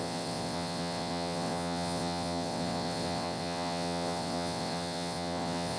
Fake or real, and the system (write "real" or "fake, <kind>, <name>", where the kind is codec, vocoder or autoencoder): fake, vocoder, WaveNeXt